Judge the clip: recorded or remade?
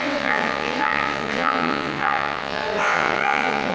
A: remade